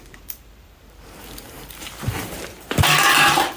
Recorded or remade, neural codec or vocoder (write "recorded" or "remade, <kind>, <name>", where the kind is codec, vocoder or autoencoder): remade, vocoder, BigVGAN v2